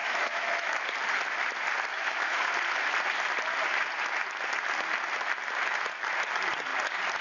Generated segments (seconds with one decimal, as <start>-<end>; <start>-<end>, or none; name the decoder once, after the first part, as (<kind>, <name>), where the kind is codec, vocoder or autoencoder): 0.0-0.8 (autoencoder, DAC-VAE); 1.9-2.5